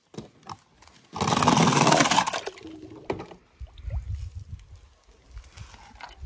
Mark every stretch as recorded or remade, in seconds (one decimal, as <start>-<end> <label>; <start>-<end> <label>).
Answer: 0.0-6.3 recorded

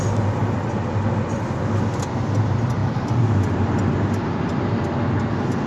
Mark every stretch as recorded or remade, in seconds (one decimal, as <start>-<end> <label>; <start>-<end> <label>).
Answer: 0.0-5.7 recorded

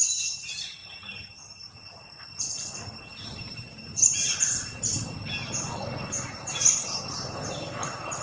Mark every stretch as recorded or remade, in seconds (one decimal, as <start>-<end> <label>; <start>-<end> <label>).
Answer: 0.0-0.8 remade; 0.8-3.1 recorded; 3.1-4.9 remade; 4.9-7.1 recorded; 7.1-8.2 remade

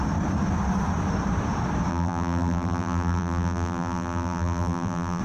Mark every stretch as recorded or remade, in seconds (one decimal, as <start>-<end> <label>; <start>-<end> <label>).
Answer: 0.0-1.9 recorded; 1.9-5.2 remade